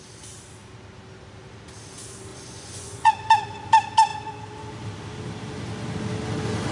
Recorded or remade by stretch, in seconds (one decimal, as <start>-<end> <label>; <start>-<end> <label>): 0.0-2.3 recorded; 2.3-3.1 remade; 3.1-6.7 recorded